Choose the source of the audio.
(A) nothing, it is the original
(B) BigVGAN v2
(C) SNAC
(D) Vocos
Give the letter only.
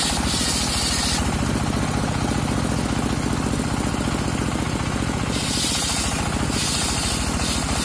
A